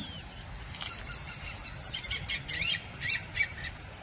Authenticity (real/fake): real